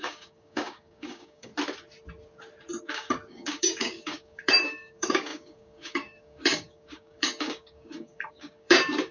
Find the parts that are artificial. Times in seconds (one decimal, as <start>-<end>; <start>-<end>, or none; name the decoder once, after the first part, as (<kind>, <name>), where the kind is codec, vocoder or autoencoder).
0.0-1.5 (codec, DAC); 2.8-9.1